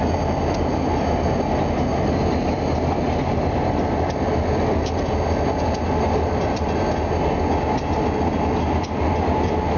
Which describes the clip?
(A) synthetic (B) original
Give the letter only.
B